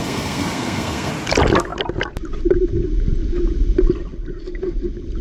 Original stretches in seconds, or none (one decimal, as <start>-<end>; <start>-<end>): 1.1-5.2

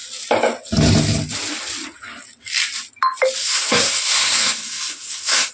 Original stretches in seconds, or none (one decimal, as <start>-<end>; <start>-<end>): 0.0-3.4